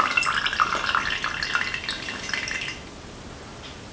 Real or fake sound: real